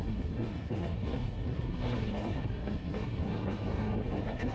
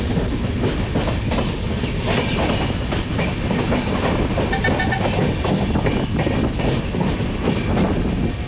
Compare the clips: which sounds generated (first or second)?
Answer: first